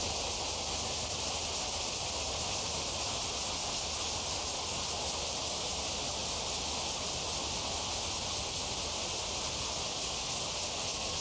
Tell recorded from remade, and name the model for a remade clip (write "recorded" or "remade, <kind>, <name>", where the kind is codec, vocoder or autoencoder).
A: recorded